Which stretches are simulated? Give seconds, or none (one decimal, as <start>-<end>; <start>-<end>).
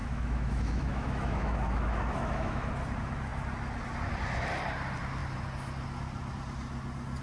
0.0-2.7